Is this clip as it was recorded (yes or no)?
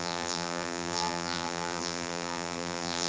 no